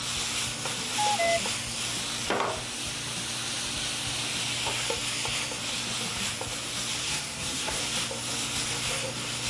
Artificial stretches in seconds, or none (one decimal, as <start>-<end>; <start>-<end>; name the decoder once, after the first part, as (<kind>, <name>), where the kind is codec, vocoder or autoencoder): 7.0-7.8 (codec, SNAC)